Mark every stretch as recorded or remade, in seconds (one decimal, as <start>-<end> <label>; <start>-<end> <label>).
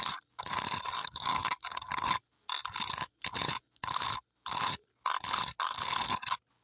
0.0-6.6 recorded